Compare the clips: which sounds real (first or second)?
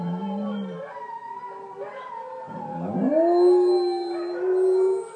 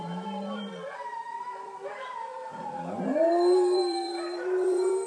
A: first